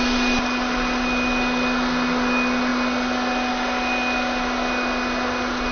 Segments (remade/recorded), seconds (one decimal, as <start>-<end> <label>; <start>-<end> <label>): 0.0-5.7 recorded